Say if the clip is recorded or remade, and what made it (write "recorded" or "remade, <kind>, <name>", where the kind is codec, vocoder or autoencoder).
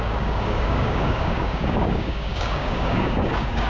remade, codec, DAC